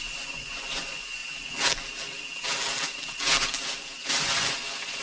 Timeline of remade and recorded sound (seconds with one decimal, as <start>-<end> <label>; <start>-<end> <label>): 0.0-1.2 remade; 1.2-4.2 recorded; 4.2-5.0 remade